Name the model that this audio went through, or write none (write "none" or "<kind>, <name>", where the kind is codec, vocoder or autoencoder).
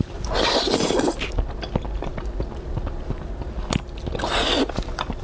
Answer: none